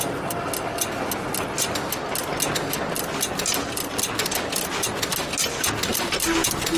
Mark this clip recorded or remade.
recorded